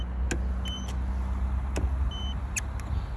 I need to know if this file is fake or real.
real